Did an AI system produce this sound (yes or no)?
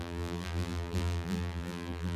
yes